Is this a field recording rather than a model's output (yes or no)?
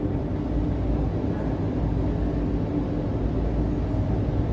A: yes